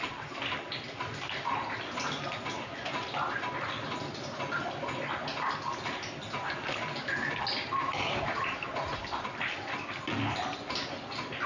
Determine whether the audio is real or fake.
real